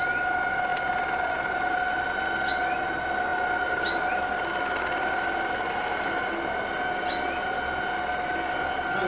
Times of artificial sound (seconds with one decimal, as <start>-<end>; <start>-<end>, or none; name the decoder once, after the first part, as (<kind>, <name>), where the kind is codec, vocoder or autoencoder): none